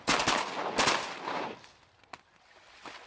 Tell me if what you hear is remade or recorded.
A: recorded